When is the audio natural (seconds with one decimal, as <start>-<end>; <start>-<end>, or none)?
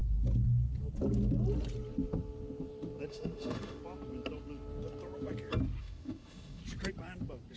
0.0-3.1; 3.8-5.8; 6.6-7.6